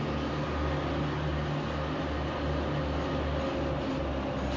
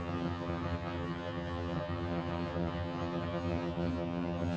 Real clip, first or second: first